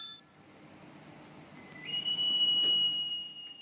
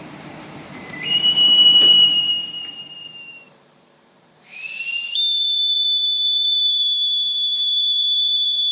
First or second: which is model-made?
second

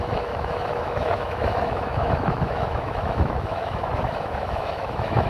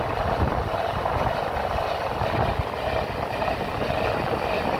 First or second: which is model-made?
first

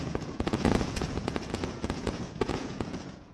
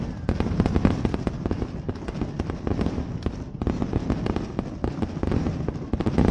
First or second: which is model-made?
first